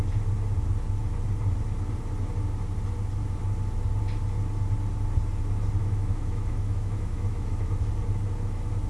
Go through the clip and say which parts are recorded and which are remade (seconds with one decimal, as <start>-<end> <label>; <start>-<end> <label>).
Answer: 0.0-5.8 recorded; 5.8-7.7 remade; 7.7-8.9 recorded